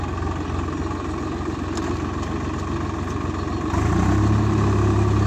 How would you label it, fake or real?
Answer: real